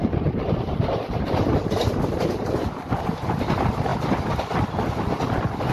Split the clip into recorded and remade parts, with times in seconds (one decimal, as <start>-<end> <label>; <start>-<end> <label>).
0.0-3.9 remade; 3.9-5.7 recorded